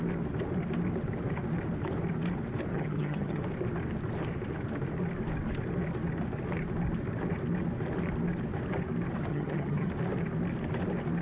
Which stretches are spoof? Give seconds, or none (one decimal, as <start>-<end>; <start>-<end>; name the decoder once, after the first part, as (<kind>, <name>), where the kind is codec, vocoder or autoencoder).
2.7-3.4 (vocoder, HiFi-GAN); 9.3-9.9